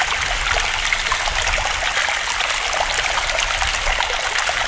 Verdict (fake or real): real